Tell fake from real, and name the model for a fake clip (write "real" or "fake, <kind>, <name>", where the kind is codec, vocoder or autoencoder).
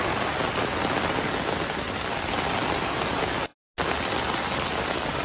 real